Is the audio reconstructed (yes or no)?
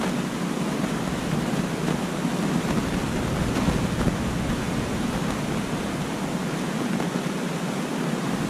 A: no